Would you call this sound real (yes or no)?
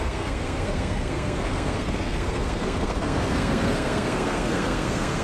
no